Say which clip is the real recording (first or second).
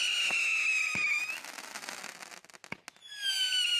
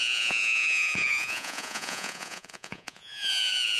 first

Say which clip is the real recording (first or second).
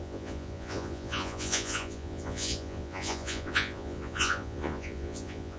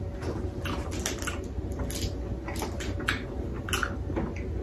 second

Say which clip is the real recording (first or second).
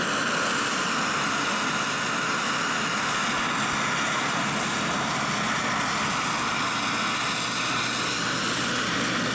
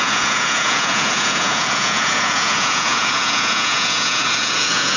first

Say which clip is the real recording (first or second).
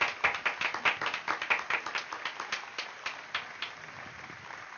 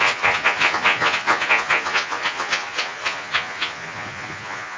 first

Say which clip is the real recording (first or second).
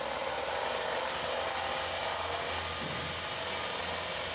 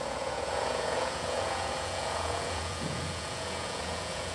first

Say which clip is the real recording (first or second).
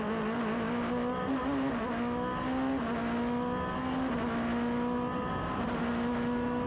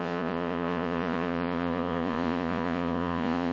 first